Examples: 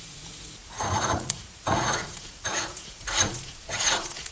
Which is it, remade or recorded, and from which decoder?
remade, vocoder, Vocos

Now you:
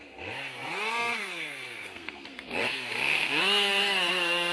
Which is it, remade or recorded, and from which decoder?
remade, codec, SNAC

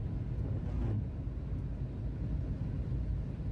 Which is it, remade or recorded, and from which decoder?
recorded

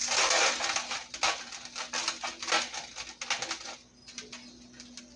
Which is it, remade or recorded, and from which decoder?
recorded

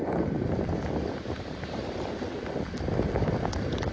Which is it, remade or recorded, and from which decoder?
recorded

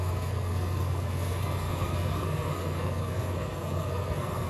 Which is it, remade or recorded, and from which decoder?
remade, codec, SNAC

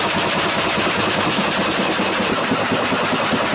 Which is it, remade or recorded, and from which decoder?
recorded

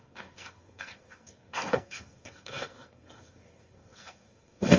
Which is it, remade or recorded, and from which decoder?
remade, codec, SNAC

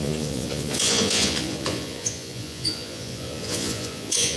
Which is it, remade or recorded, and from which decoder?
remade, vocoder, Vocos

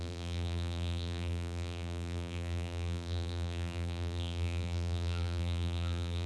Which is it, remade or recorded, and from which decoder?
remade, vocoder, BigVGAN v2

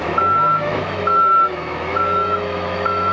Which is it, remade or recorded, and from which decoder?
remade, autoencoder, DAC-VAE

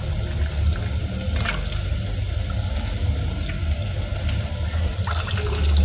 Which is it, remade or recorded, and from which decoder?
recorded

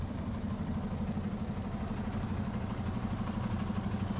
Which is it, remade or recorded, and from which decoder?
recorded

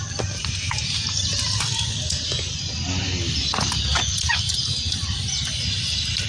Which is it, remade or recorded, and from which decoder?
recorded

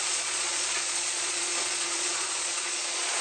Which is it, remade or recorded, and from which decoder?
remade, vocoder, Vocos